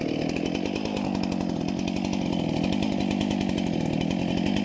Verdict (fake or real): real